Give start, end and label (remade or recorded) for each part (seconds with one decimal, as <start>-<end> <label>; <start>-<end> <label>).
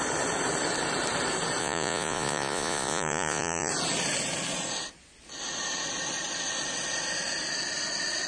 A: 0.0-1.6 recorded; 1.6-3.7 remade; 3.7-8.3 recorded